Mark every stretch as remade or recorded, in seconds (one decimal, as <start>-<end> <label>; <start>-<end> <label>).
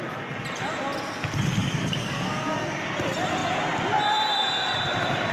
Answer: 0.0-1.6 recorded; 1.6-2.8 remade; 2.8-5.3 recorded